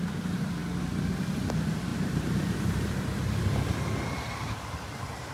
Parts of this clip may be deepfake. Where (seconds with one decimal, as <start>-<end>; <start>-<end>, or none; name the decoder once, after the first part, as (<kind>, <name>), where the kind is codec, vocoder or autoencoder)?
0.0-0.6 (vocoder, BigVGAN v2); 1.5-5.3